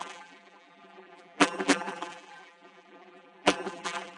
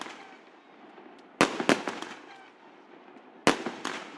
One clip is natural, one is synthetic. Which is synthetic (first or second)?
first